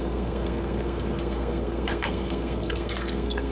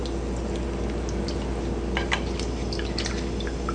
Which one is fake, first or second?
first